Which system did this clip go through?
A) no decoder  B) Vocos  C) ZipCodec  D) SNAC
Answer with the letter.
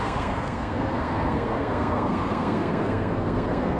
D